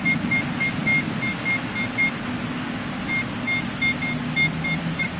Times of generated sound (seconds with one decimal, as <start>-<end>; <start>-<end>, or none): none